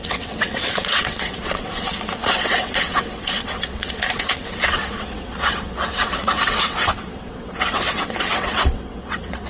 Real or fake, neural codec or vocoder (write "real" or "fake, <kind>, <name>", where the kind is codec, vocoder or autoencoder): fake, vocoder, WaveNeXt